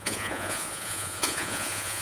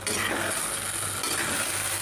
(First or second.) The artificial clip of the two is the first